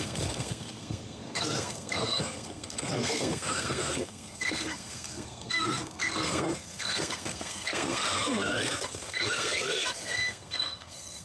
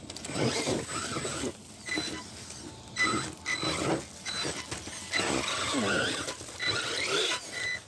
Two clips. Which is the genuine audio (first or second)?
second